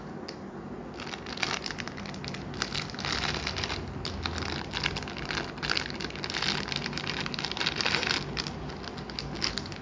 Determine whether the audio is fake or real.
real